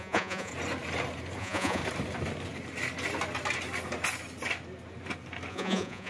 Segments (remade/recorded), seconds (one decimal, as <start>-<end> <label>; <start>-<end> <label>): 0.0-0.5 remade; 0.5-1.4 recorded; 1.4-1.8 remade; 1.8-5.5 recorded; 5.5-6.1 remade